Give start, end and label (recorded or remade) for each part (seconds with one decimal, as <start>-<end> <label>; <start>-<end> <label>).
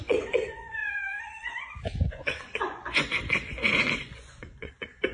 0.0-5.1 remade